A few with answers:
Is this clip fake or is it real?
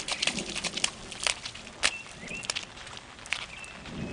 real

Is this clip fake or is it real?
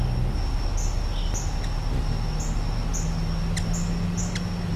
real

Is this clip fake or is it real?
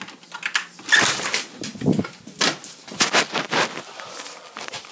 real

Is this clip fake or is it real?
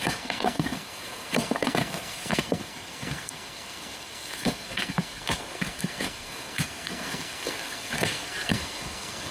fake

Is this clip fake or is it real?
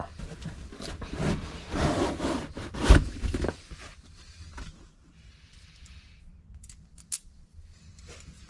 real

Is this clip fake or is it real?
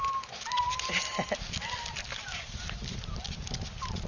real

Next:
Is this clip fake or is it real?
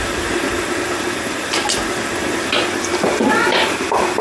real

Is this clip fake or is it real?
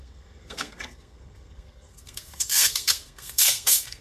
fake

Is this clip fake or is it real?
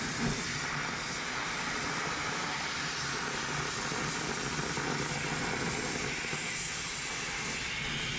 real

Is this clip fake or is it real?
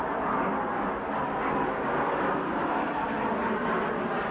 real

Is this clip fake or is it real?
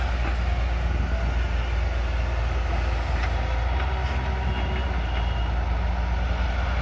real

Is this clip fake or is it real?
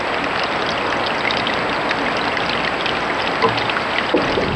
real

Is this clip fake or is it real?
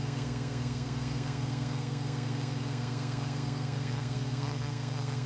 fake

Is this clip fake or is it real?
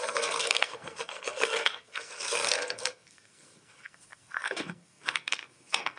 fake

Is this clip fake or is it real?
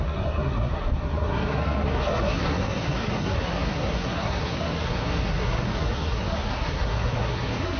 fake